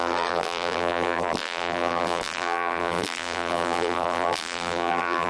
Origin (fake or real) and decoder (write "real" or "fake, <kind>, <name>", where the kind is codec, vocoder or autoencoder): fake, vocoder, BigVGAN v2